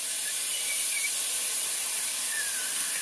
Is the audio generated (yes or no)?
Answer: no